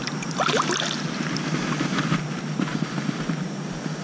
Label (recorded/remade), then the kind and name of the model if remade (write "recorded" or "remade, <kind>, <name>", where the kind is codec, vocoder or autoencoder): recorded